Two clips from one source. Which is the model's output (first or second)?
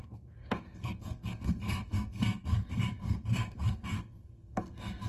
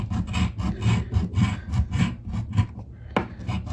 first